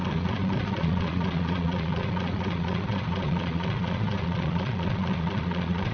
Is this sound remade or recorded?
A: remade